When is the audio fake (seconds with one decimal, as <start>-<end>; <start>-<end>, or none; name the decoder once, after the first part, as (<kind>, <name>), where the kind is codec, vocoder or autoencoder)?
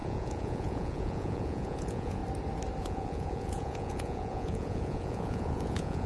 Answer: 0.0-2.2 (vocoder, Vocos); 2.8-6.1